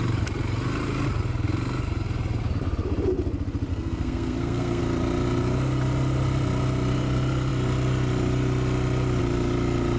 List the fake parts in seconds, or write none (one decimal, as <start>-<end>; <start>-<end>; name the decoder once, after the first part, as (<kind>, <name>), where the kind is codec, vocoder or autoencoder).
3.7-4.8 (codec, SNAC)